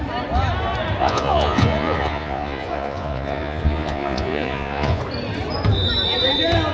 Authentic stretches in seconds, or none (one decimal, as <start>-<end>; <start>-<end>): 0.0-1.0; 5.0-6.7